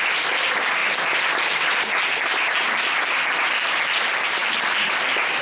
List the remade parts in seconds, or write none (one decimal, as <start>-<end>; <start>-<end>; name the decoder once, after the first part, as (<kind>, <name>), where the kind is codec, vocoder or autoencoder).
none